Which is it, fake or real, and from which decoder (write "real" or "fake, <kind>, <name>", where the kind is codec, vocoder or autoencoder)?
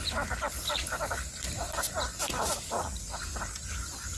real